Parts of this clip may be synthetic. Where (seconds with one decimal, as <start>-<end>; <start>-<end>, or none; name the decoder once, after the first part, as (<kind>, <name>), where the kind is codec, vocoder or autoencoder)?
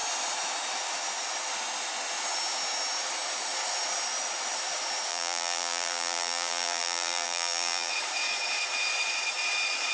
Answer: 5.1-7.9 (vocoder, BigVGAN v2)